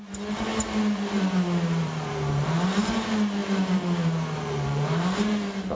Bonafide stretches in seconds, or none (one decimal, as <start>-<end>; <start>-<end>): none